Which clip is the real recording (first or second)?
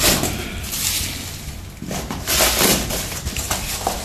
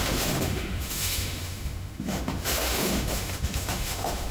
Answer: first